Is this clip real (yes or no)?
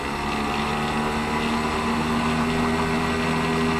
yes